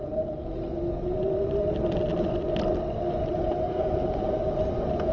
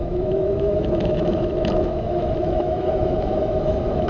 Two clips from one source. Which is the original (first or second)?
first